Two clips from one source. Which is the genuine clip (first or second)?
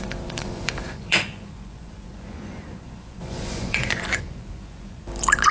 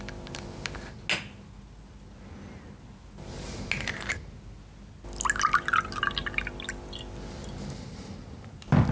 second